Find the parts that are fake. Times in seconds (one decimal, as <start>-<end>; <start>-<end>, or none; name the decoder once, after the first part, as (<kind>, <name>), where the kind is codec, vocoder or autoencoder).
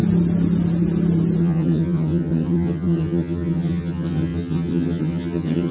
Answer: 1.4-5.7 (vocoder, HiFi-GAN)